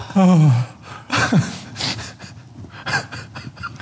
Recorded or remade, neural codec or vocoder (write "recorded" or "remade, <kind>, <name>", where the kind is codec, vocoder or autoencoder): recorded